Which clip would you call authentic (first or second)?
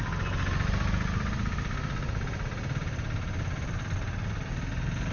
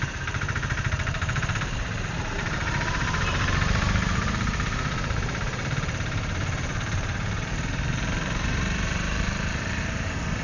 first